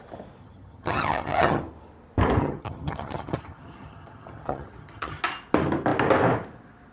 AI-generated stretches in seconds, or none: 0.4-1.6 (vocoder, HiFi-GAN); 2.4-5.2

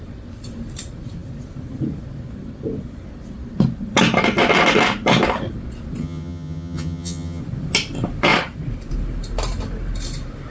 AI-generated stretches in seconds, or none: 6.0-7.4 (vocoder, HiFi-GAN)

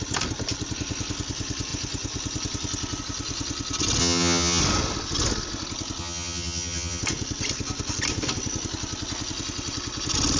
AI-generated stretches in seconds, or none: 4.0-4.6 (vocoder, HiFi-GAN); 6.0-7.0

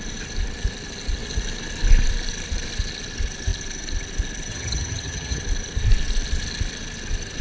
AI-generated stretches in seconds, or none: 4.5-5.4 (vocoder, HiFi-GAN)

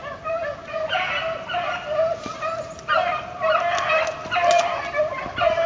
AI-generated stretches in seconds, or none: none

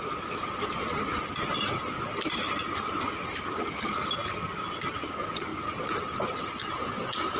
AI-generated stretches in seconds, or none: none

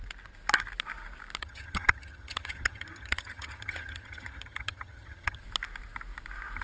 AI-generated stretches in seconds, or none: 1.4-5.4 (vocoder, HiFi-GAN)

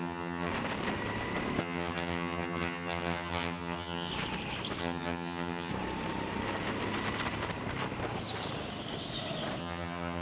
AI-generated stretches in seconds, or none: 0.0-0.5 (vocoder, HiFi-GAN); 1.6-4.1; 4.8-5.7; 9.6-10.2